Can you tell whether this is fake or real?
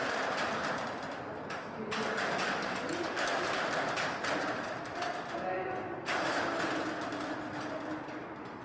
real